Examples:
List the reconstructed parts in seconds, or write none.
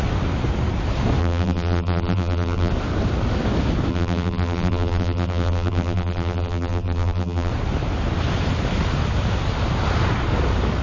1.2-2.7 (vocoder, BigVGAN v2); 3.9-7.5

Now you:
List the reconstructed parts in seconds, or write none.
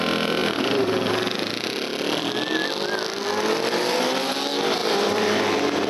0.4-1.1 (vocoder, BigVGAN v2); 4.8-5.4